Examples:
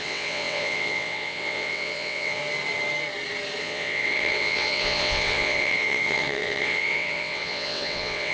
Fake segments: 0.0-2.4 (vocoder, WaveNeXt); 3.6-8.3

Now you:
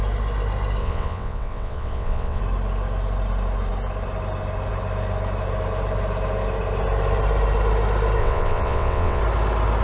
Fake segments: 0.8-2.4 (vocoder, WaveNeXt); 8.2-9.2

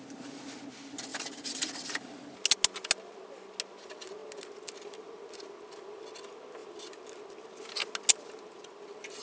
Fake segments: 1.1-1.7 (vocoder, BigVGAN v2); 6.6-7.2

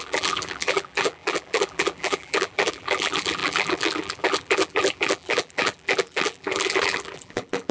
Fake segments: 0.0-7.7 (vocoder, BigVGAN v2)